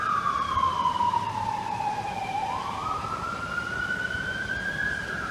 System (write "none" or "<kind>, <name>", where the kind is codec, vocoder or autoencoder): vocoder, BigVGAN v2